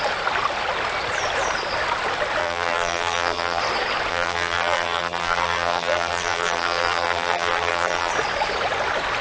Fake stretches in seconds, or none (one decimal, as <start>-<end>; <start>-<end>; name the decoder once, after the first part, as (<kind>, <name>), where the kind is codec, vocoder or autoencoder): 2.4-3.6 (vocoder, BigVGAN v2); 4.1-8.1